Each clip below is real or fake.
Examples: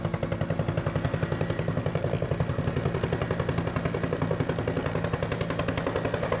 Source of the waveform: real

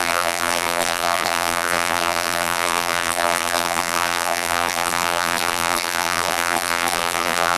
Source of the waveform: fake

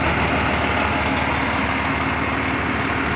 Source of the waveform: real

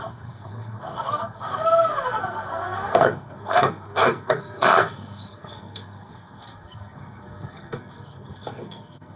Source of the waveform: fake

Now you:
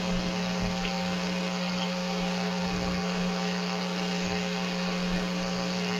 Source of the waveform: fake